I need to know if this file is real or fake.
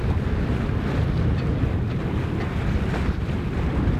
real